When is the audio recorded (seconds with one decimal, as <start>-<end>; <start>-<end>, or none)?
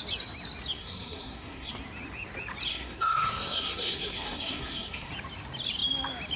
0.0-0.8; 1.7-2.7; 5.1-6.4